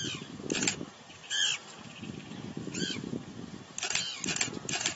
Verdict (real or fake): real